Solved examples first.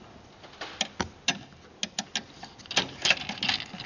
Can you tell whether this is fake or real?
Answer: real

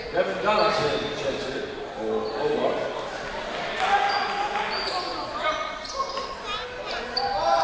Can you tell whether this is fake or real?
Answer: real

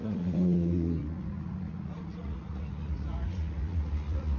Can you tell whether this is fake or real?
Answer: fake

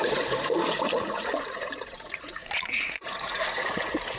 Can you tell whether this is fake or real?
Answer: fake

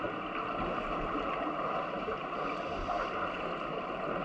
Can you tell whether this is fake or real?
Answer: real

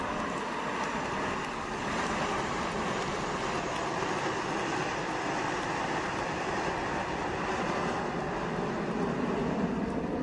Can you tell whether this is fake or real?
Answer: real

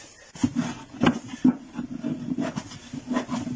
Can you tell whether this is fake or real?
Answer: real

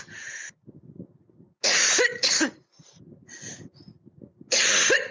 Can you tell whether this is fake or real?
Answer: real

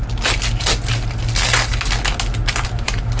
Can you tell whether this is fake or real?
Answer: real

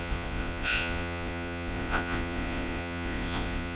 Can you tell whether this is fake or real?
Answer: fake